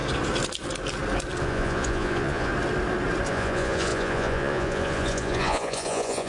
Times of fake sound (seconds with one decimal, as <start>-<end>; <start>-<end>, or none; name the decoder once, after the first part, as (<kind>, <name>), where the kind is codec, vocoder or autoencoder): 1.4-2.5 (vocoder, Vocos); 3.3-6.3